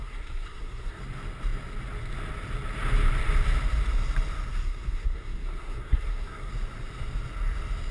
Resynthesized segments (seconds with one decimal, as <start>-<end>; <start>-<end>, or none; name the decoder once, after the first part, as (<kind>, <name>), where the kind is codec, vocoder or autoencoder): 0.0-1.0 (codec, SNAC); 4.5-6.5